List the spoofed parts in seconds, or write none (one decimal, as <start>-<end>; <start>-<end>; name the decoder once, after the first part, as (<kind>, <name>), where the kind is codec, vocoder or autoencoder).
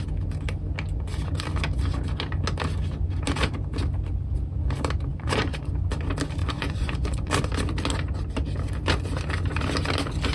5.1-5.7 (vocoder, Vocos); 6.4-7.3